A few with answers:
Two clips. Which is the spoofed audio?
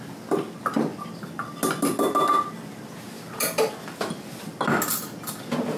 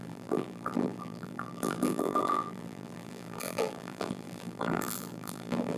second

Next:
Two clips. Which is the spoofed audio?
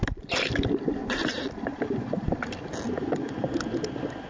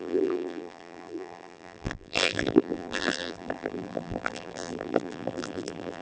second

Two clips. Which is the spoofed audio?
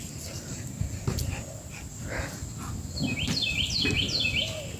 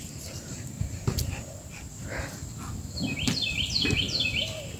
second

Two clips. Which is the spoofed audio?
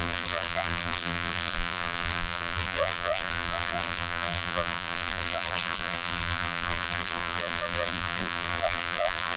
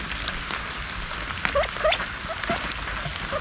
first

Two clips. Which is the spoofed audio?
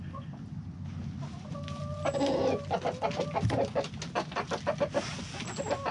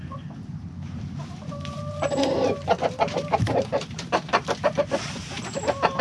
second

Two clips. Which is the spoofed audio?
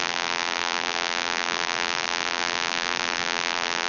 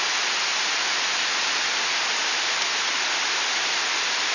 first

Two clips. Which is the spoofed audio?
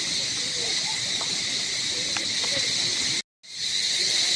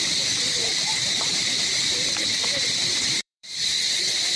second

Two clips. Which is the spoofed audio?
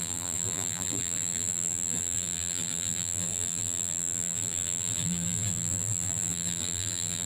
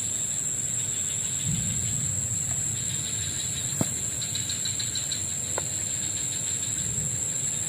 first